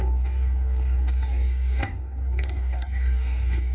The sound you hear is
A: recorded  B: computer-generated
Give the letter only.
B